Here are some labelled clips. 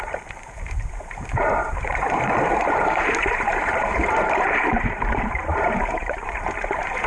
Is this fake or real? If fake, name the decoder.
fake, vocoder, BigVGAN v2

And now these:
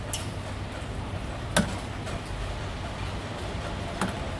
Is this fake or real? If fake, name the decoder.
real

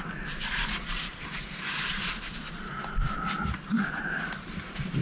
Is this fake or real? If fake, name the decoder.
fake, vocoder, BigVGAN v2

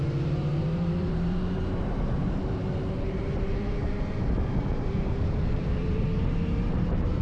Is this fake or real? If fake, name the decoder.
fake, vocoder, BigVGAN v2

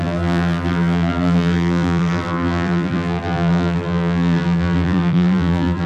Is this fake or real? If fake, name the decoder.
fake, vocoder, BigVGAN v2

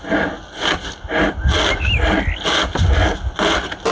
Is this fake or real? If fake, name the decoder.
real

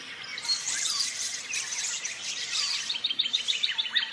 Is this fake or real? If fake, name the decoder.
fake, vocoder, BigVGAN v2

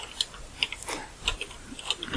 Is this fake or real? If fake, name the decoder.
real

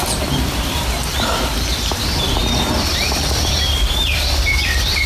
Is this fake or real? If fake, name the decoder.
fake, vocoder, BigVGAN v2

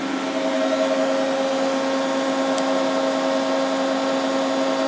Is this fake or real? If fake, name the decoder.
real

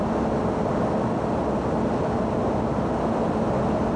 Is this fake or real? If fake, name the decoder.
real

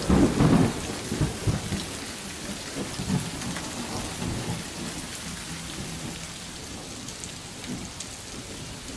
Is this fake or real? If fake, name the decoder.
real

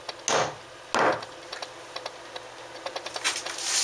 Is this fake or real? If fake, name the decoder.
real